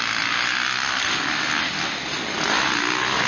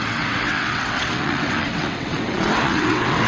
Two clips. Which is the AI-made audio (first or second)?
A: second